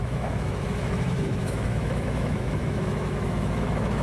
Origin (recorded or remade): remade